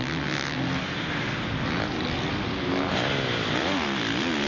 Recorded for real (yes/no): yes